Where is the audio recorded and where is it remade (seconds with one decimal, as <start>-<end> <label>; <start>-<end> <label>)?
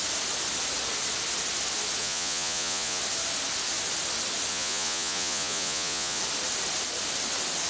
0.0-2.0 recorded; 2.0-3.0 remade; 3.0-4.5 recorded; 4.5-6.2 remade; 6.2-7.7 recorded